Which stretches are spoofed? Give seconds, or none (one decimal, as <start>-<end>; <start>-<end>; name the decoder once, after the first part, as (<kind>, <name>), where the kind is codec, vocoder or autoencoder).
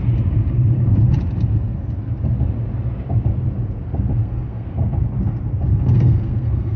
4.2-4.7 (codec, SNAC); 5.7-6.8